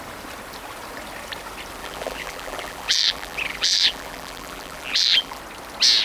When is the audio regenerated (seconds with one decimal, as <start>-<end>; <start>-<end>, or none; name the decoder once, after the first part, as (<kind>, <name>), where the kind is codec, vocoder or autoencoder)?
1.8-5.4 (vocoder, BigVGAN v2)